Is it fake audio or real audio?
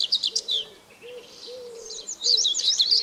fake